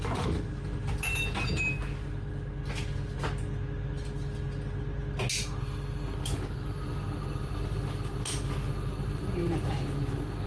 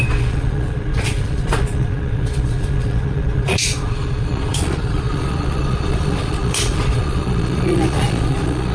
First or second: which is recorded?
first